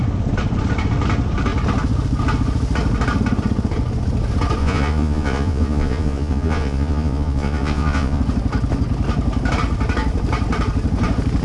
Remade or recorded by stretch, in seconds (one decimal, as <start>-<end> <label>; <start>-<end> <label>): 0.0-4.6 recorded; 4.6-8.2 remade; 8.2-11.4 recorded